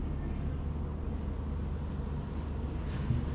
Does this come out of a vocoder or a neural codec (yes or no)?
no